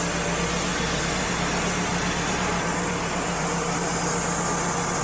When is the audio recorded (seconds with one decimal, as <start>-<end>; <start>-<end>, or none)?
0.0-0.7; 1.3-1.9; 3.9-5.0